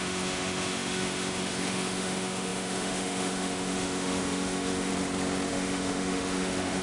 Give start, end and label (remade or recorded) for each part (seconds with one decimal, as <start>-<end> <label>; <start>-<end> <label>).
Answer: 0.0-4.9 remade; 4.9-5.5 recorded; 5.5-6.8 remade